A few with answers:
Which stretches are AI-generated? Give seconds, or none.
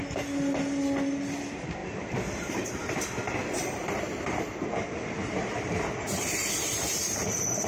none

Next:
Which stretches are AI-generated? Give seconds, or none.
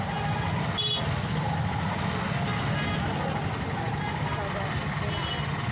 none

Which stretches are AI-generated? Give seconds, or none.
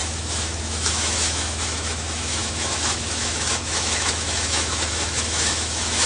0.0-6.1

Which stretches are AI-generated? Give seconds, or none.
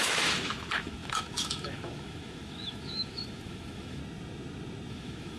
0.0-4.0; 4.9-5.4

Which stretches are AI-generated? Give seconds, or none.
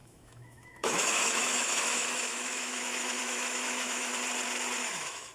0.0-4.1; 4.8-5.3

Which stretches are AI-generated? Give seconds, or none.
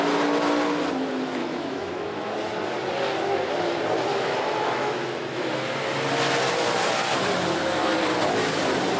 1.4-2.3; 4.1-5.5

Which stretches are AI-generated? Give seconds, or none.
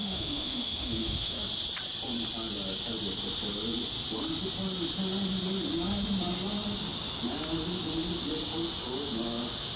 0.0-1.4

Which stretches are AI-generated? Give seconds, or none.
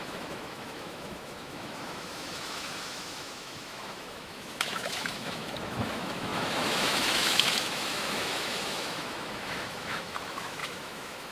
0.0-11.3